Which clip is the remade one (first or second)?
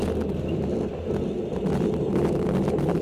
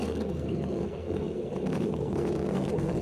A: second